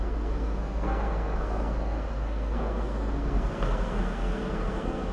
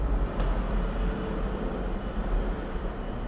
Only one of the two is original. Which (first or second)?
second